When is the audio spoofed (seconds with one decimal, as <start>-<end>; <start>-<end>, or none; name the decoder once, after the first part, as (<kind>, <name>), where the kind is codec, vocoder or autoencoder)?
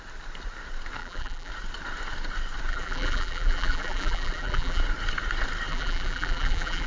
1.0-1.5 (vocoder, BigVGAN v2); 2.7-4.8; 5.7-6.9